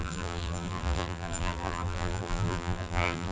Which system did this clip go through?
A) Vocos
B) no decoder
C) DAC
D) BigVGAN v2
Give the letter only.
D